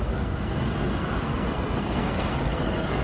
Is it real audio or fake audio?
fake